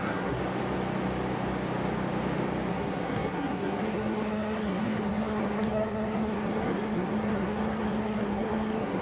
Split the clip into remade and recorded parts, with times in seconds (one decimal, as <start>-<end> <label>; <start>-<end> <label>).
0.0-0.4 remade; 0.4-2.7 recorded; 2.7-9.0 remade